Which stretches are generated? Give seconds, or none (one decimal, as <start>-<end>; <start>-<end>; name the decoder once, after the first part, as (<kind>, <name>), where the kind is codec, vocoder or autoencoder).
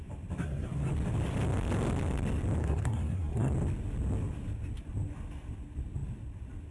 0.4-0.9 (codec, SNAC); 2.6-3.5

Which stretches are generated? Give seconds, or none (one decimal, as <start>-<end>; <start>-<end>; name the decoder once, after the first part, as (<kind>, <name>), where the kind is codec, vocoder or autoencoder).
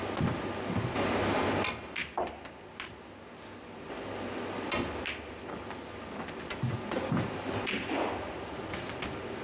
none